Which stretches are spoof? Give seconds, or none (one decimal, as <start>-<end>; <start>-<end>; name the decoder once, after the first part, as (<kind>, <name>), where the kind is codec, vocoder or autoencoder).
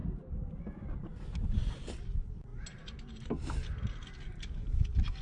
none